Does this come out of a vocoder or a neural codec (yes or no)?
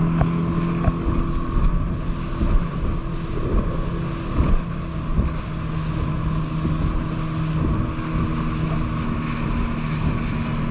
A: no